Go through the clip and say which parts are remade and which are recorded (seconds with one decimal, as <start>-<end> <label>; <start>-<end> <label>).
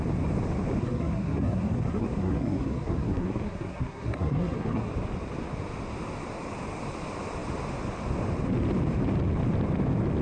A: 0.0-0.8 recorded; 0.8-4.9 remade; 4.9-10.2 recorded